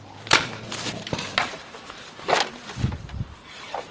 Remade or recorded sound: recorded